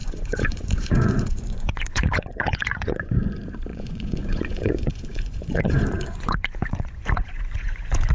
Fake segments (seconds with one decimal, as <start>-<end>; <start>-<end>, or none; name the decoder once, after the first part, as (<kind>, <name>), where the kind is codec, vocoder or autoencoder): 0.0-3.1 (vocoder, Vocos); 3.7-8.1